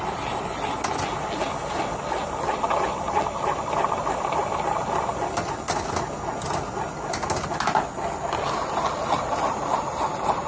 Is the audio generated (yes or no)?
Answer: no